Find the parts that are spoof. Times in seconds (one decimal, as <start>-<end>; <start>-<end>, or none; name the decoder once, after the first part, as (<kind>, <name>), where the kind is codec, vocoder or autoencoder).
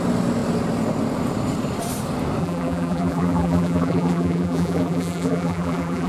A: 2.4-6.1 (vocoder, BigVGAN v2)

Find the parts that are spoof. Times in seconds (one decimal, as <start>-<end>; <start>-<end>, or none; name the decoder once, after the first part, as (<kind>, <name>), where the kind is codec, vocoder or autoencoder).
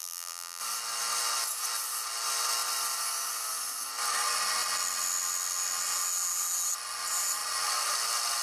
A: 0.0-0.6 (vocoder, BigVGAN v2)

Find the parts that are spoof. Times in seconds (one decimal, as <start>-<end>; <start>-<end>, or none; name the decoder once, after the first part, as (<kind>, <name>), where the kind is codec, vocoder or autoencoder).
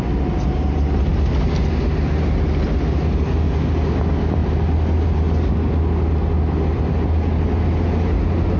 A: none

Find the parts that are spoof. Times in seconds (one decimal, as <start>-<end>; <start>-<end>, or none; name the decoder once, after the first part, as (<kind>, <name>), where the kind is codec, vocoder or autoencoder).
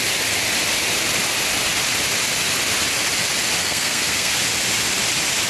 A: 3.6-4.4 (codec, SNAC)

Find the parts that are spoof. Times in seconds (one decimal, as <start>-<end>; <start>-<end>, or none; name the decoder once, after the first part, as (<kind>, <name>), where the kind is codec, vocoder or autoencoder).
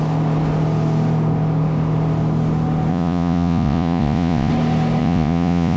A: 2.9-4.5 (vocoder, Vocos); 5.0-5.8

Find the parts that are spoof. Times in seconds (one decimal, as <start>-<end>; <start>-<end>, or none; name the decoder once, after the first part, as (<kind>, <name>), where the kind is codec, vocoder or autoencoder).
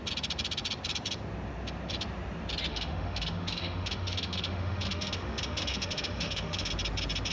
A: 2.7-6.7 (autoencoder, DAC-VAE)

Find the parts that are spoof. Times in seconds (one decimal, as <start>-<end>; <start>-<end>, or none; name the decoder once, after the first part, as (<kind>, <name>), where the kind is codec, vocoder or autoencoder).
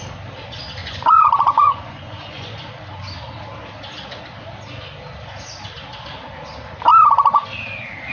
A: 0.8-2.7 (vocoder, Vocos)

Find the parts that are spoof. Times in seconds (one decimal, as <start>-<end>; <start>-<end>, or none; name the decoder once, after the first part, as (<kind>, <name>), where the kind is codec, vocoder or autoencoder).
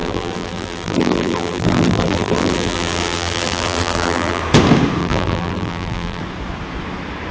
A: 0.0-4.4 (vocoder, BigVGAN v2); 5.0-6.2